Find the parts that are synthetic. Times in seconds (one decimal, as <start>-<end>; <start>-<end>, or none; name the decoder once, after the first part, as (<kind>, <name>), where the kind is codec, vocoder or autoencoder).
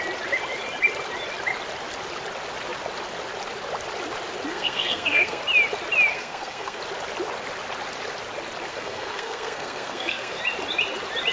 4.5-5.4 (codec, SNAC); 6.1-6.8; 8.7-10.4